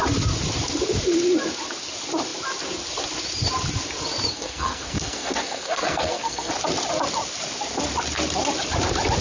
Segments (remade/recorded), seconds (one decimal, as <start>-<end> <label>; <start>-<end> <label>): 0.0-4.3 recorded; 4.3-6.5 remade; 6.5-9.2 recorded

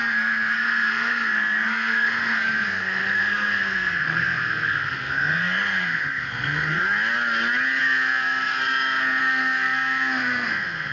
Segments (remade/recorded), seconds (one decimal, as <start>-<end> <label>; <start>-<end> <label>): 0.0-6.8 remade; 6.8-7.8 recorded; 7.8-8.6 remade; 8.6-9.2 recorded; 9.2-10.9 remade

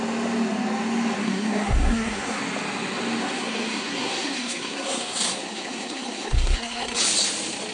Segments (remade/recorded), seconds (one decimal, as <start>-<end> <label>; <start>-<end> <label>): 0.0-1.2 recorded; 1.2-2.4 remade; 2.4-3.2 recorded; 3.2-7.0 remade; 7.0-7.7 recorded

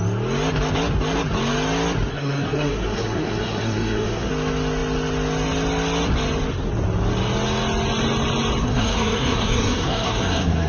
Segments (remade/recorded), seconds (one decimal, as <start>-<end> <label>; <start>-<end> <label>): 0.0-2.1 recorded; 2.1-4.3 remade; 4.3-8.6 recorded; 8.6-10.7 remade

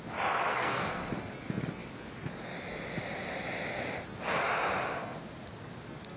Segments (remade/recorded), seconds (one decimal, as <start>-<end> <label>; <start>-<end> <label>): 0.0-0.5 recorded; 0.5-1.1 remade; 1.1-6.2 recorded